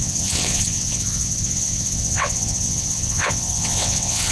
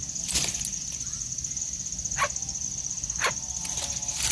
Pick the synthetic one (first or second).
first